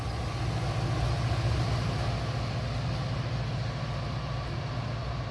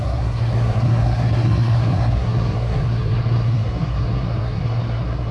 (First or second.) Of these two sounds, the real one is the first